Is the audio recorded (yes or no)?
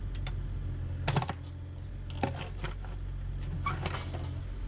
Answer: yes